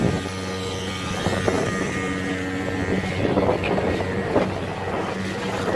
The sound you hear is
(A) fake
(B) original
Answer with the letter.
B